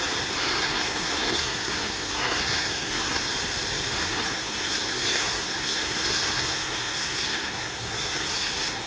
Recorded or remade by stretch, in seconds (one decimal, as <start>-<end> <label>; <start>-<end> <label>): 0.0-0.6 recorded; 0.6-3.3 remade; 3.3-4.0 recorded; 4.0-8.9 remade